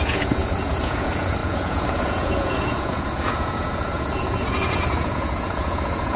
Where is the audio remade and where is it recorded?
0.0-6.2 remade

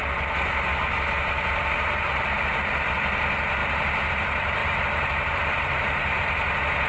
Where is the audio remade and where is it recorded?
0.0-2.1 recorded; 2.1-2.7 remade; 2.7-3.6 recorded; 3.6-4.1 remade; 4.1-4.6 recorded; 4.6-6.2 remade; 6.2-6.9 recorded

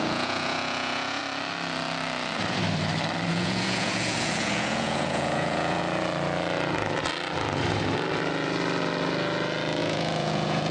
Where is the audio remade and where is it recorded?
0.0-1.2 remade; 1.2-3.3 recorded; 3.3-5.8 remade; 5.8-9.8 recorded; 9.8-10.7 remade

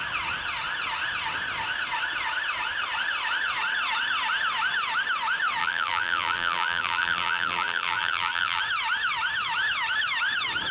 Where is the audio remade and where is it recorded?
0.0-5.6 recorded; 5.6-8.6 remade; 8.6-10.7 recorded

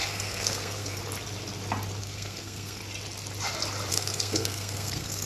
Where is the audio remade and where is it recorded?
0.0-1.0 remade; 1.0-2.0 recorded; 2.0-2.8 remade; 2.8-3.9 recorded; 3.9-5.3 remade